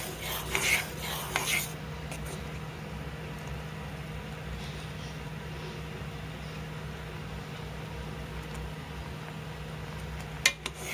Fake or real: real